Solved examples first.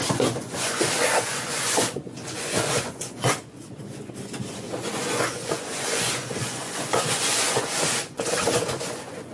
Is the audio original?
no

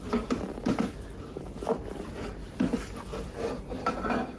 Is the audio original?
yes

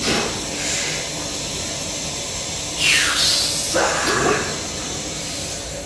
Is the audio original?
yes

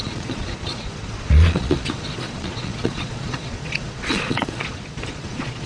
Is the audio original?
no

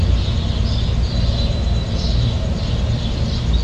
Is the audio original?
yes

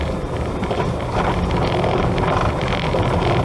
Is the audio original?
yes